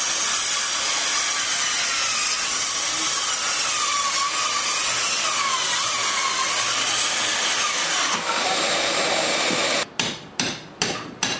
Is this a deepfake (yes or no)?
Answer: no